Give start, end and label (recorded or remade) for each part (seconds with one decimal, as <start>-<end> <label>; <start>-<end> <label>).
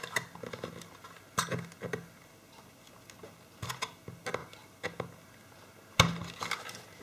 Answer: 0.0-7.0 recorded